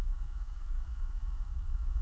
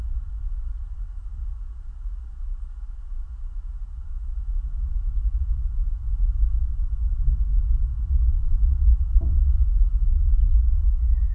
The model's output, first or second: first